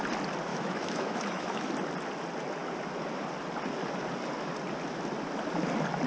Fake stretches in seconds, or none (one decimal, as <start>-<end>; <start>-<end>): 0.5-1.7